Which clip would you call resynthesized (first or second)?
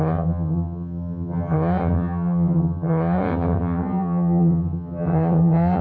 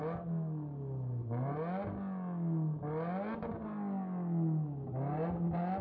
first